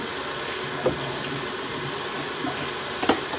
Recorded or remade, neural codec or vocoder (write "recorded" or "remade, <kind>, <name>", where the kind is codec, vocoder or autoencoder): remade, vocoder, BigVGAN v2